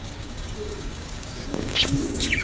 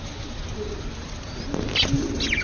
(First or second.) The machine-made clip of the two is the first